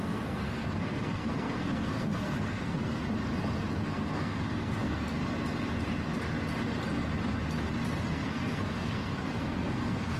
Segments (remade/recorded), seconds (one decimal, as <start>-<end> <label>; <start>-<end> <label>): 0.0-3.0 remade; 3.0-3.7 recorded; 3.7-5.2 remade; 5.2-8.1 recorded; 8.1-10.2 remade